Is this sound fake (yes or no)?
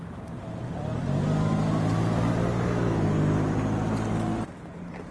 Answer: no